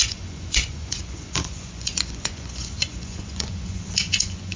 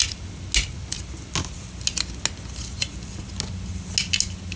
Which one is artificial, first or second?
first